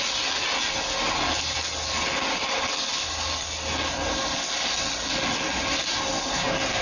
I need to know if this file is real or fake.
real